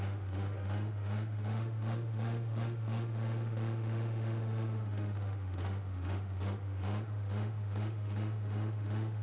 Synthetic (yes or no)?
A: yes